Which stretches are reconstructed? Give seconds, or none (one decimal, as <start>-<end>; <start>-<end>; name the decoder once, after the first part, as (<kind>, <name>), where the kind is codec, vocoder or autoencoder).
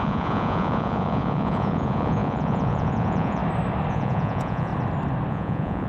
0.0-3.4 (vocoder, Vocos); 3.9-4.7; 5.3-5.9